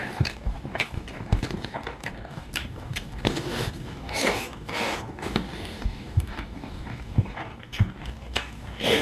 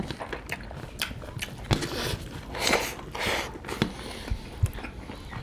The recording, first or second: second